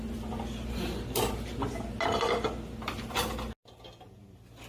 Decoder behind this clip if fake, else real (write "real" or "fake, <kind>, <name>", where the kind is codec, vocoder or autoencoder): real